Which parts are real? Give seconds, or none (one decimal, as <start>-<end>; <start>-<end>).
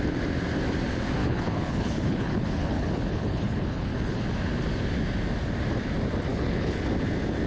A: 0.0-1.2; 4.2-6.3; 6.8-7.5